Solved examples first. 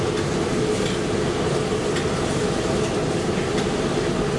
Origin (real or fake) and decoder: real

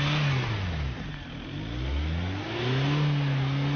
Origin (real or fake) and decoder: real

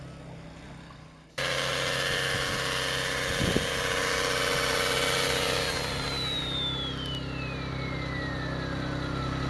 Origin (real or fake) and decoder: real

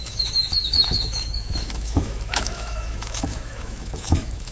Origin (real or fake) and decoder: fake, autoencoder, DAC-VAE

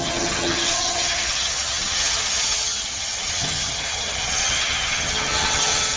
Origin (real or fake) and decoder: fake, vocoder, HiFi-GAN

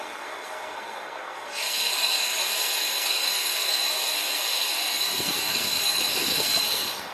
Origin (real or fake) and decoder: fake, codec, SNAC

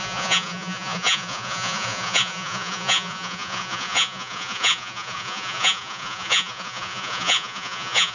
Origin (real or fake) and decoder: fake, vocoder, Vocos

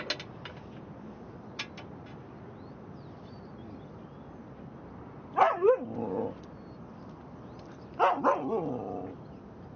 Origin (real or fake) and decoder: real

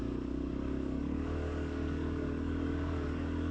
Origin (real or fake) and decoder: fake, codec, DAC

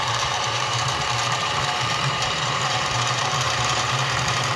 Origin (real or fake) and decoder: fake, vocoder, BigVGAN v2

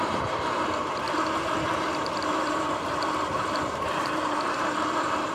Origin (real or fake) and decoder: fake, vocoder, BigVGAN v2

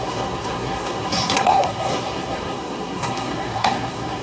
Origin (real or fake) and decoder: fake, codec, SNAC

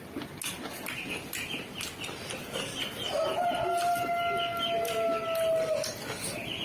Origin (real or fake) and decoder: real